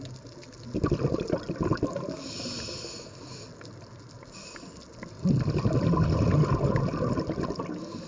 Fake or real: real